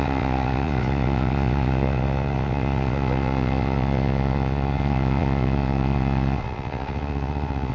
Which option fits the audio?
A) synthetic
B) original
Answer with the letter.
A